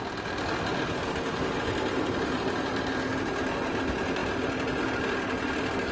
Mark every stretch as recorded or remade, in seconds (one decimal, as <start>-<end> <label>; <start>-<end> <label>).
0.0-5.9 recorded